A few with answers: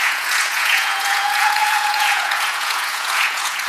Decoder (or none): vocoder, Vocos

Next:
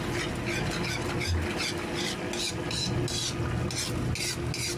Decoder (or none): none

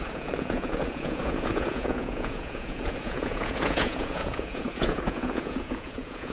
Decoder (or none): vocoder, Vocos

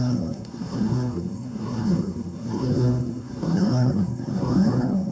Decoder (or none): codec, SNAC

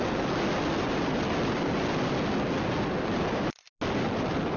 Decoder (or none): none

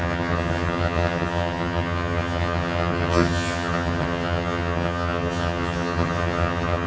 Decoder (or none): vocoder, HiFi-GAN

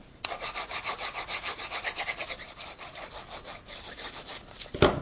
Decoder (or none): none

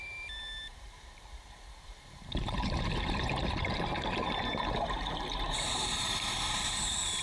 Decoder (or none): vocoder, BigVGAN v2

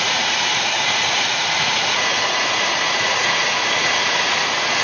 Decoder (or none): vocoder, Vocos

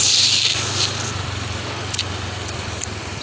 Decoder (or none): vocoder, BigVGAN v2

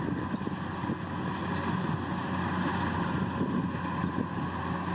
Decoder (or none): none